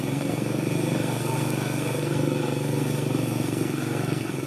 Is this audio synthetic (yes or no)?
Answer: yes